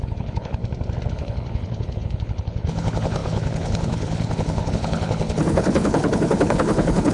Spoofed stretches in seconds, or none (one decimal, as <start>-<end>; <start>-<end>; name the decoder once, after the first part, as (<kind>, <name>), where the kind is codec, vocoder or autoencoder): 0.0-0.6 (codec, HILCodec); 1.1-7.1